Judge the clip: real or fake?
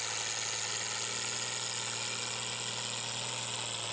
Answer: real